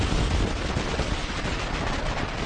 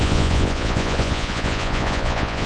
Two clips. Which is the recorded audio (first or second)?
first